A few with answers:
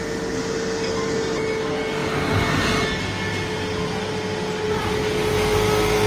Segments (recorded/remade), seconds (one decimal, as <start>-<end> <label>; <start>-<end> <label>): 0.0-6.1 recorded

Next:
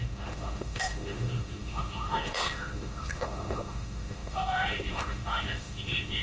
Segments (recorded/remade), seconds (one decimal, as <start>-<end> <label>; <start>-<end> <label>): 0.0-6.2 remade

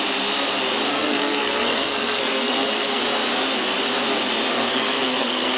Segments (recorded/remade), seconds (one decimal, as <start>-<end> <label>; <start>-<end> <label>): 0.0-0.9 recorded; 0.9-3.0 remade; 3.0-4.5 recorded; 4.5-5.6 remade

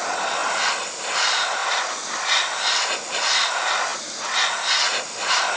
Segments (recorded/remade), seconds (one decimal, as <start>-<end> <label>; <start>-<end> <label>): 0.0-5.6 recorded